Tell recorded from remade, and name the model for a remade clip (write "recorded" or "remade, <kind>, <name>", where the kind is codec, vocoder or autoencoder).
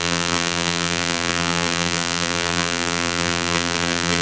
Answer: remade, vocoder, BigVGAN v2